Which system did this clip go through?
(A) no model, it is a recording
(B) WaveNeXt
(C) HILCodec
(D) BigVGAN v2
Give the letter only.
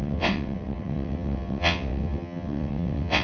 B